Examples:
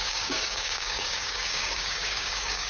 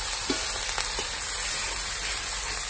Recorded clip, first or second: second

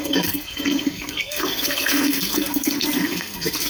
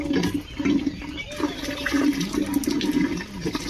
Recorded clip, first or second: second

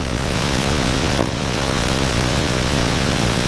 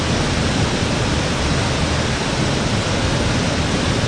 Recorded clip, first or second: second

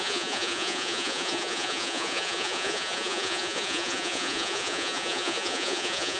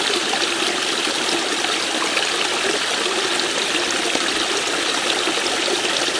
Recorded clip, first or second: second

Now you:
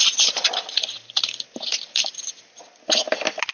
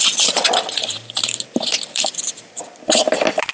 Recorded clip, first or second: first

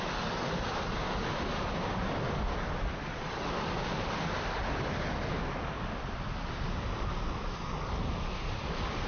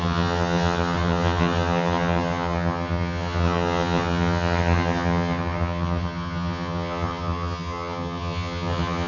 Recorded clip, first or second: first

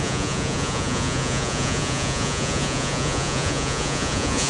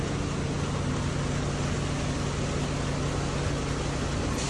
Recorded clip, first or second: second